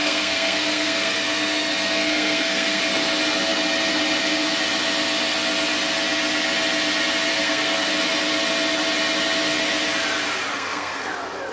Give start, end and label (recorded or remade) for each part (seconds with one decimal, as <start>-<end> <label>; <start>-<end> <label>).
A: 0.0-2.8 remade; 2.8-7.3 recorded; 7.3-7.9 remade; 7.9-10.5 recorded; 10.5-11.1 remade; 11.1-11.5 recorded